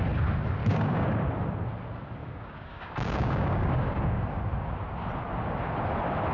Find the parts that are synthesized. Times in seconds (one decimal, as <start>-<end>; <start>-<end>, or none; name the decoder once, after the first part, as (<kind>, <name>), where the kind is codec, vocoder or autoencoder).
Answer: 0.6-1.1 (codec, DAC); 2.2-4.4